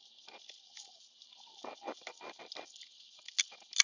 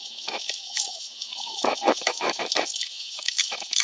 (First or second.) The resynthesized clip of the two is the second